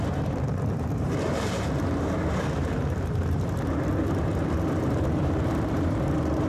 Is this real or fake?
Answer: fake